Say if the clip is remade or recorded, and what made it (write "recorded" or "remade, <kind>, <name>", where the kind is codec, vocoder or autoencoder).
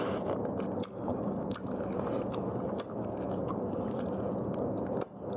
recorded